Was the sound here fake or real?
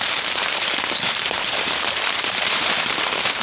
fake